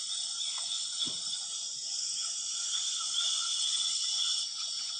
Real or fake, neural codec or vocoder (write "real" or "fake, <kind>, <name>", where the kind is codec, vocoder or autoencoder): fake, vocoder, Vocos